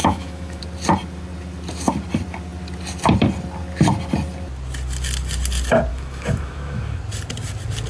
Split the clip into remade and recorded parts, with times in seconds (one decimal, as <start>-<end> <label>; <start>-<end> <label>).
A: 0.0-0.6 remade; 0.6-5.9 recorded; 5.9-7.0 remade; 7.0-7.9 recorded